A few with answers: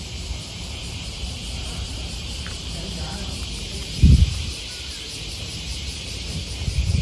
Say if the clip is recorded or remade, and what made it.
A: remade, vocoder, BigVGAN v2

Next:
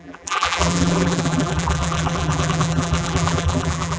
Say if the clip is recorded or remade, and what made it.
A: remade, vocoder, BigVGAN v2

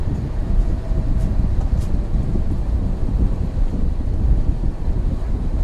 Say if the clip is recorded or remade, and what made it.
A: remade, vocoder, BigVGAN v2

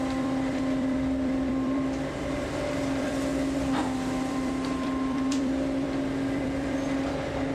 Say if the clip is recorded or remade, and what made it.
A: remade, vocoder, BigVGAN v2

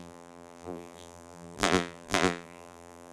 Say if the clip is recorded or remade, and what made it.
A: remade, vocoder, BigVGAN v2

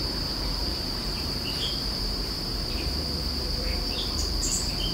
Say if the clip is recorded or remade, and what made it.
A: remade, vocoder, BigVGAN v2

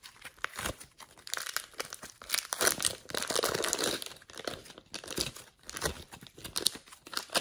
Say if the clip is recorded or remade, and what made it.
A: remade, vocoder, BigVGAN v2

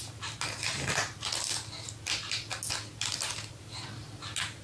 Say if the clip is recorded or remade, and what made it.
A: recorded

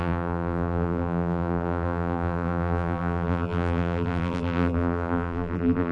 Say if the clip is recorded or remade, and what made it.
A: remade, vocoder, BigVGAN v2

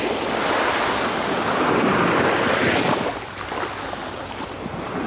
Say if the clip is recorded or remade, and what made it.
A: recorded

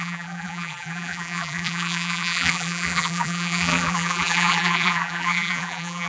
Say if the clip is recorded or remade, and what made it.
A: remade, vocoder, BigVGAN v2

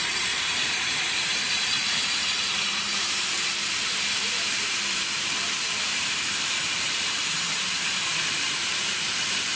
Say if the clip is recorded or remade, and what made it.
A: remade, vocoder, BigVGAN v2